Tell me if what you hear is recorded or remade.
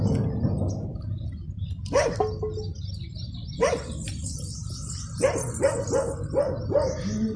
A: recorded